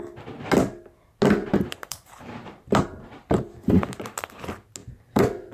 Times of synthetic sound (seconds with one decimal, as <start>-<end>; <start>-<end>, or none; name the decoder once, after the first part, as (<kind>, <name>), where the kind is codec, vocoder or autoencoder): 1.4-4.2 (vocoder, BigVGAN v2); 4.8-5.5